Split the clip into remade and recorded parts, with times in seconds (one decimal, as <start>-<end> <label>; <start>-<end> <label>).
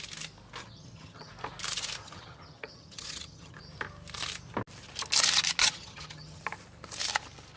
0.0-0.6 recorded; 0.6-1.3 remade; 1.3-2.0 recorded; 2.0-3.6 remade; 3.6-5.6 recorded; 5.6-6.4 remade; 6.4-7.6 recorded